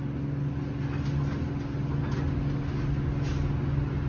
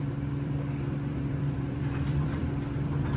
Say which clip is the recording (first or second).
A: first